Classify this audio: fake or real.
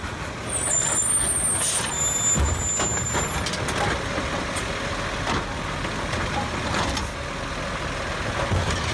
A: real